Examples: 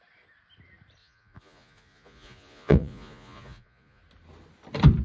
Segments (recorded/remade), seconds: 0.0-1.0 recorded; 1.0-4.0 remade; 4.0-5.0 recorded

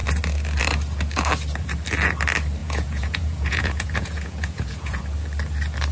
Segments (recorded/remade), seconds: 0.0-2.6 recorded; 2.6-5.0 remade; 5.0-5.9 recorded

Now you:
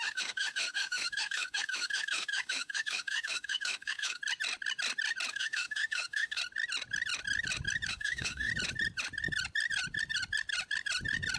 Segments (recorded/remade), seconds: 0.0-4.2 remade; 4.2-5.3 recorded; 5.3-6.4 remade; 6.4-7.9 recorded; 7.9-8.5 remade; 8.5-11.4 recorded

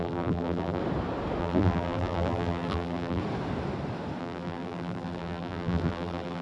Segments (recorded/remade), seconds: 0.0-0.8 remade; 0.8-1.4 recorded; 1.4-3.2 remade; 3.2-4.2 recorded; 4.2-6.4 remade